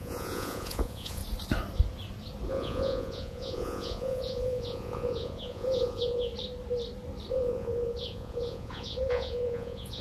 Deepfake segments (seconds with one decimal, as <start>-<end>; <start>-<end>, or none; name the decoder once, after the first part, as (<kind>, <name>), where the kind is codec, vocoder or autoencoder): 0.0-1.2 (vocoder, Vocos); 2.5-6.3; 7.3-10.0